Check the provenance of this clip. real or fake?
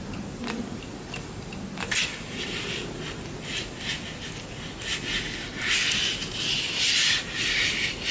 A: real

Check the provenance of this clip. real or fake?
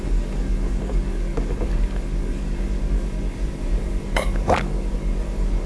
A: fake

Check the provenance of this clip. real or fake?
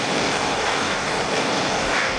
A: fake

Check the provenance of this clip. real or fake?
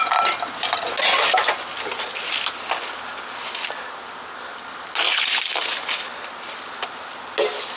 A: real